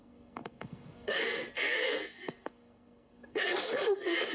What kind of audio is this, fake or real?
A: fake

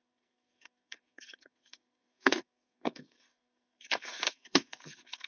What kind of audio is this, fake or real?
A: fake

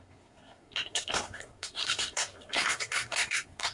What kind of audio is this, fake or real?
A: fake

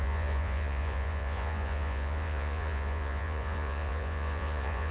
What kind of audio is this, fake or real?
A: fake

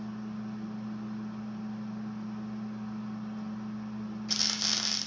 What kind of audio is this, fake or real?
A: real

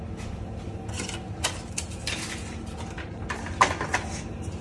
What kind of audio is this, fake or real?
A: real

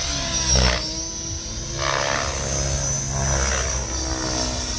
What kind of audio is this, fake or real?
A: real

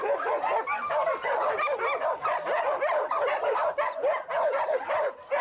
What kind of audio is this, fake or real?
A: real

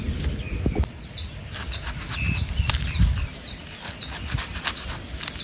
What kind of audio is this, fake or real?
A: real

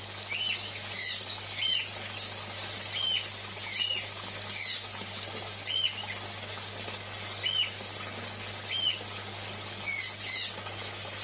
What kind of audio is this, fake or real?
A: real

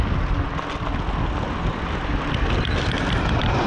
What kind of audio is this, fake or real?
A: real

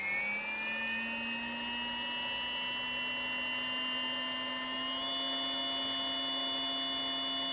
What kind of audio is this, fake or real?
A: real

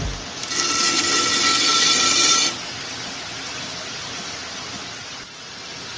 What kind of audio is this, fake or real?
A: real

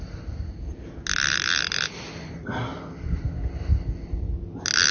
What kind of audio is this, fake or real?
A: real